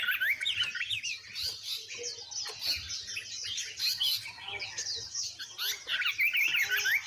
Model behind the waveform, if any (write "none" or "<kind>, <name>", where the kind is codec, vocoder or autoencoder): none